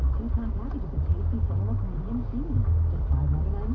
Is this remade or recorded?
recorded